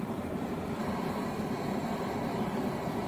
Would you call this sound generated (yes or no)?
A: yes